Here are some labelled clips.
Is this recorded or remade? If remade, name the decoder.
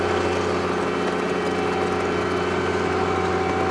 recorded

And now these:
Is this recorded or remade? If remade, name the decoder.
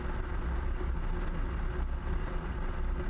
recorded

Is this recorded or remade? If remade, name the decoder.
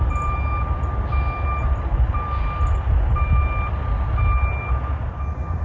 recorded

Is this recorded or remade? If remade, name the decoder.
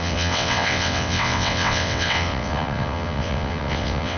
remade, vocoder, WaveNeXt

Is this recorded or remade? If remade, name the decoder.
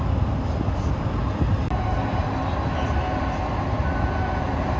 recorded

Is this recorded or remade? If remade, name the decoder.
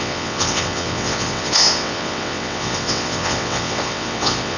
remade, vocoder, WaveNeXt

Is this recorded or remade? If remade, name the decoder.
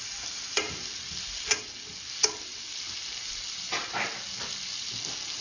recorded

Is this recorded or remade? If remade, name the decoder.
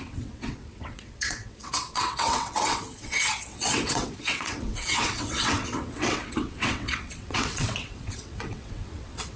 remade, vocoder, WaveNeXt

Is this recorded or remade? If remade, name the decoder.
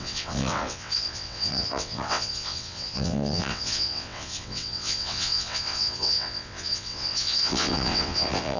remade, vocoder, WaveNeXt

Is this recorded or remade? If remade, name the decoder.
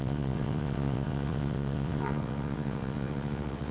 remade, vocoder, WaveNeXt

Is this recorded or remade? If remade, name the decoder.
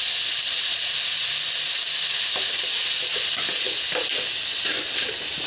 recorded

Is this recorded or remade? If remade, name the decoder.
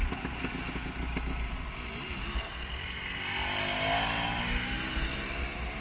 recorded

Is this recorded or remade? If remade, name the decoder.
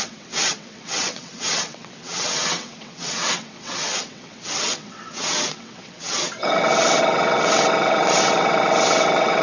remade, vocoder, WaveNeXt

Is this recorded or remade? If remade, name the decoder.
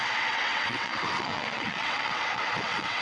remade, vocoder, WaveNeXt